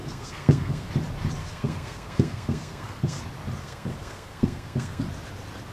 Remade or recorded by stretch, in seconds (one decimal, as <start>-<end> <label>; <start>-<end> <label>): 0.0-0.9 remade; 0.9-1.4 recorded; 1.4-3.2 remade; 3.2-3.6 recorded; 3.6-5.0 remade; 5.0-5.7 recorded